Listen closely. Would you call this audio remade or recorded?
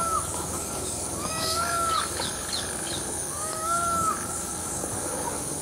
remade